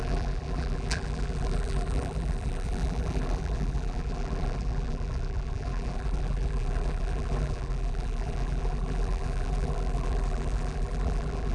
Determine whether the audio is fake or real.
fake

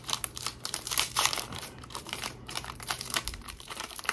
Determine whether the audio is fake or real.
fake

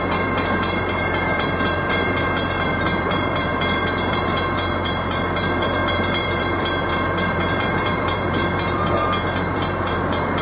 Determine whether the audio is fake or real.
fake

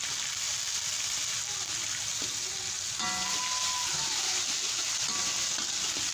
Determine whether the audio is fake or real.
real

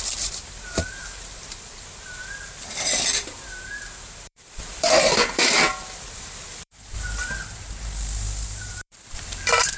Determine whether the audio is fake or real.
fake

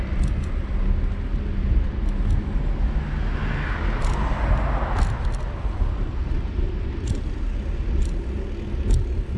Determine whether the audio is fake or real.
real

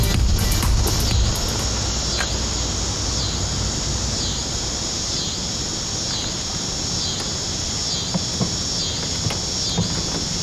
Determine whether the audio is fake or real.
real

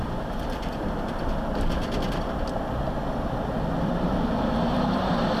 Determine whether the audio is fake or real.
fake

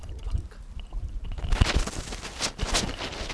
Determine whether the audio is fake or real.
real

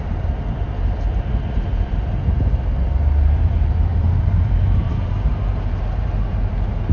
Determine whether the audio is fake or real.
fake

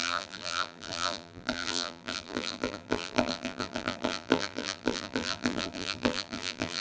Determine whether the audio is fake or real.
fake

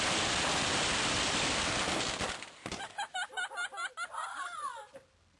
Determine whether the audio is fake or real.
fake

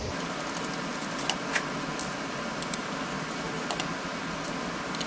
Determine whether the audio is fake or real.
real